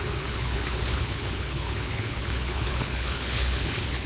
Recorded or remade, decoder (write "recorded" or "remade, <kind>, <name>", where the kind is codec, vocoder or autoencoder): remade, codec, HILCodec